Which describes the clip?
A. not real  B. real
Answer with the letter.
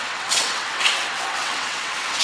A